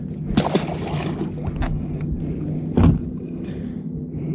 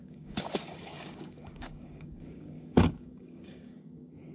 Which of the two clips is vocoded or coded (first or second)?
second